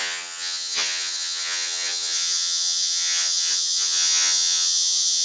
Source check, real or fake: fake